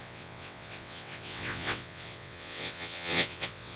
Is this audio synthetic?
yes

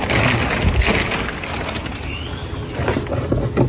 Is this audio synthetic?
no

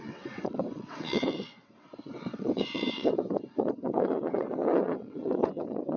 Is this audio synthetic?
yes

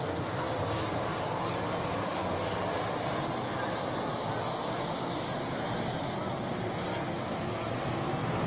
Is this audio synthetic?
no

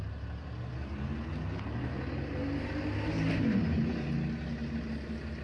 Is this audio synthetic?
no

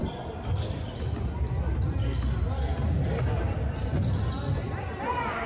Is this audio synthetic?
no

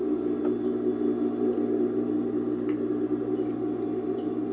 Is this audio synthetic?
no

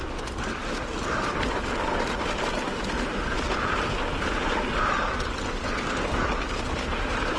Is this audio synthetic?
no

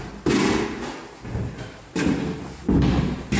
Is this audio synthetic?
no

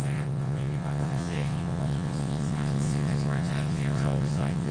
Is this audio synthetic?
yes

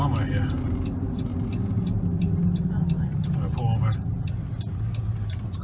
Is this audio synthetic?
no